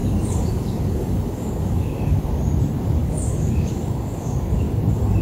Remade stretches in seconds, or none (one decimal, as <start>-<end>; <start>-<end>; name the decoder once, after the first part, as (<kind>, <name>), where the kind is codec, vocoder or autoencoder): 0.0-2.3 (codec, DAC); 3.0-4.8